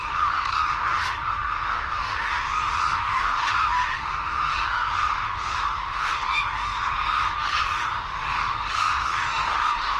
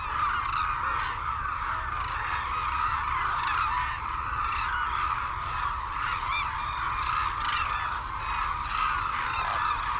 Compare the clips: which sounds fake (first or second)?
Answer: first